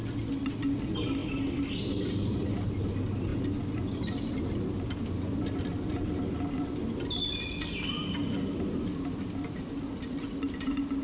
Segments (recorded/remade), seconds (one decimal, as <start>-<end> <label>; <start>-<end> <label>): 0.0-11.0 recorded